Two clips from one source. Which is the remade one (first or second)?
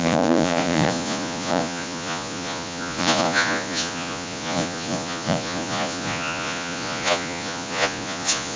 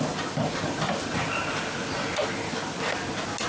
first